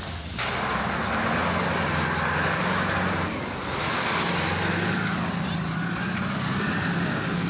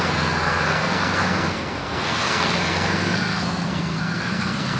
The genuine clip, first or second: first